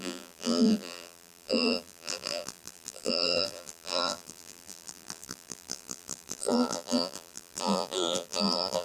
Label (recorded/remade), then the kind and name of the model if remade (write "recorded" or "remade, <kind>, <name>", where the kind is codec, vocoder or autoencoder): remade, vocoder, BigVGAN v2